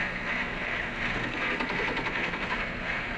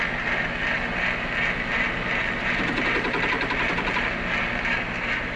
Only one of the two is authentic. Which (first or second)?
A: second